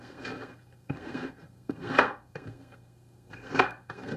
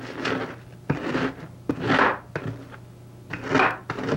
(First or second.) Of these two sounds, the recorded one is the second